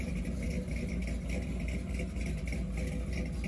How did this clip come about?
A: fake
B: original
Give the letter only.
B